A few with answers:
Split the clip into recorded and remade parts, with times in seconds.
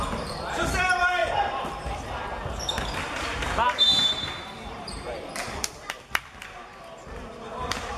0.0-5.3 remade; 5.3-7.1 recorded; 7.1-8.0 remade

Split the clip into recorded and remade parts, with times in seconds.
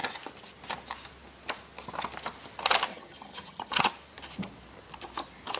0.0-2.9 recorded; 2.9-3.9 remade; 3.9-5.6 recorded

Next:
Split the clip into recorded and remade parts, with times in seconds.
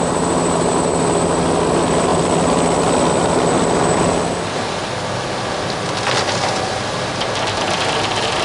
0.0-8.4 recorded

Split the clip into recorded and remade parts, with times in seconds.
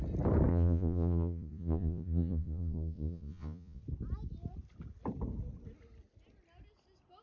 0.0-0.5 recorded; 0.5-3.8 remade; 3.8-7.2 recorded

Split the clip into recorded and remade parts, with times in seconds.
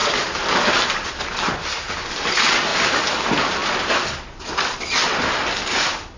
0.0-6.2 recorded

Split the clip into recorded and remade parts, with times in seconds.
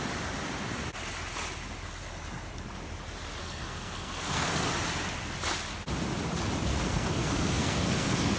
0.0-3.4 recorded; 3.4-4.7 remade; 4.7-6.7 recorded; 6.7-8.4 remade